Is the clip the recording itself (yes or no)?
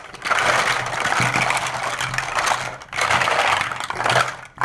yes